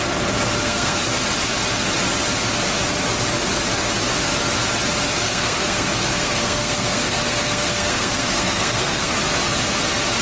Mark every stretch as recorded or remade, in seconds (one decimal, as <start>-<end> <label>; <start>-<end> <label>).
0.0-0.6 recorded; 0.6-1.0 remade; 1.0-5.2 recorded; 5.2-9.1 remade; 9.1-10.2 recorded